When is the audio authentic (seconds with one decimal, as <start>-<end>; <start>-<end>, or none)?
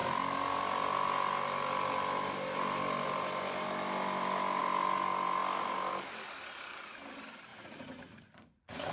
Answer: 0.0-7.5